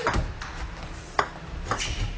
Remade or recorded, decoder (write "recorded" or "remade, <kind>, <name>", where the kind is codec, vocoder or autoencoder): recorded